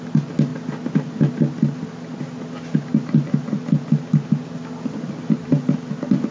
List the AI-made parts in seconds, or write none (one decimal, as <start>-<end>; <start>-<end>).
none